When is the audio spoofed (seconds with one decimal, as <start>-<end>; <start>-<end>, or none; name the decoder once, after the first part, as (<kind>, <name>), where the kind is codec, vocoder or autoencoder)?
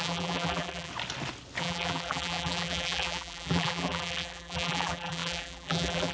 0.0-0.9 (vocoder, BigVGAN v2); 1.6-6.1